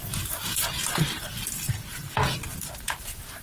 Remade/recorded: remade